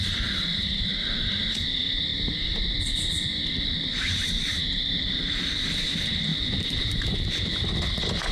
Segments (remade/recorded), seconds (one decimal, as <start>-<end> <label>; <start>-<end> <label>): 0.0-8.3 recorded